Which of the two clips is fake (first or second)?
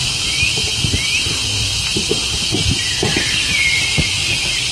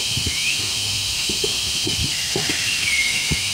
second